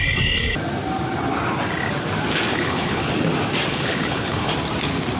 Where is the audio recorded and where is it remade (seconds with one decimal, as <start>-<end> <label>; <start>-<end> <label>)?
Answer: 0.0-2.5 recorded; 2.5-3.1 remade; 3.1-3.7 recorded; 3.7-4.5 remade; 4.5-5.2 recorded